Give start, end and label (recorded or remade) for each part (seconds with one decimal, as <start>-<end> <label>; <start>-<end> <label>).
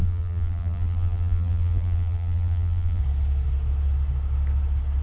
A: 0.0-3.0 remade; 3.0-5.0 recorded